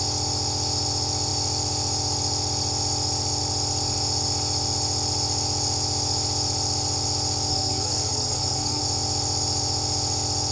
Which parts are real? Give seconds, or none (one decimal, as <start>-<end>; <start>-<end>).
0.0-7.5; 8.8-10.5